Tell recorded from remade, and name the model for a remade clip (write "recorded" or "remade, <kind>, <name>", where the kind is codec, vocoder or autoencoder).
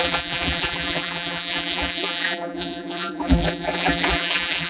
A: remade, vocoder, BigVGAN v2